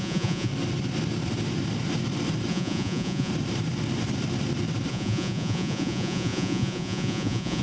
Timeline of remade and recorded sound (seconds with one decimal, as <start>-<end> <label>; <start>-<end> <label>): 0.0-0.5 remade; 0.5-2.5 recorded; 2.5-3.3 remade; 3.3-4.9 recorded; 4.9-7.6 remade